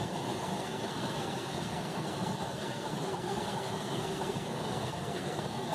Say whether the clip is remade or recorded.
remade